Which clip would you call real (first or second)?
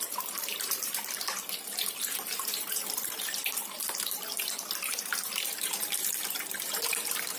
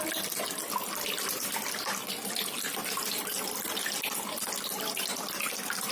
second